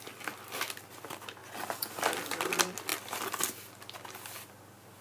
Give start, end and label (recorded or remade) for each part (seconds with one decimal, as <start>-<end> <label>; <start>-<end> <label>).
0.0-5.0 recorded